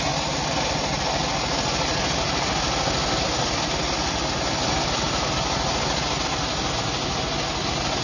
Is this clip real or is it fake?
real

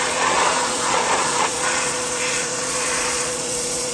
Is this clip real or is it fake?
fake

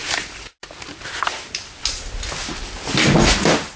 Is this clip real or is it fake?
real